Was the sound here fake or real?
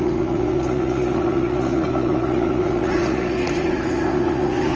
fake